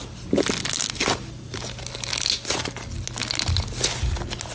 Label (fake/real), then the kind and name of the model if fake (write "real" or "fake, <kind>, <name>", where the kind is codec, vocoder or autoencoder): real